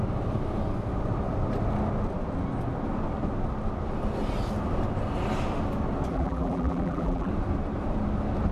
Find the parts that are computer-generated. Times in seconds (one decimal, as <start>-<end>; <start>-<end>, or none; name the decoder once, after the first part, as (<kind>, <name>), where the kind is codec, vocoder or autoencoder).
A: 6.1-7.3 (vocoder, BigVGAN v2)